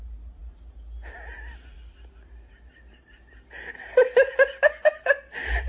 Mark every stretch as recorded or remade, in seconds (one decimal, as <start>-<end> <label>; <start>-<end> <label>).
0.0-5.7 recorded